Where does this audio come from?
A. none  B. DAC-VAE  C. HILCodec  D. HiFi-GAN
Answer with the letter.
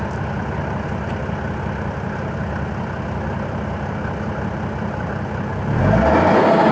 A